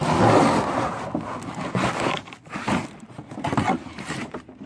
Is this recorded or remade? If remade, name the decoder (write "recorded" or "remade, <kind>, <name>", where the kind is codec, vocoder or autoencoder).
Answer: recorded